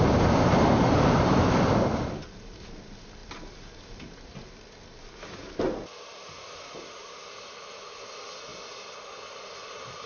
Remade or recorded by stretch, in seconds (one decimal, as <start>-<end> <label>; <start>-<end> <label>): 0.0-10.1 recorded